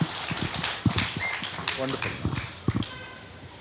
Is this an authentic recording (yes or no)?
yes